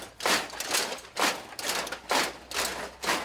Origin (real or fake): real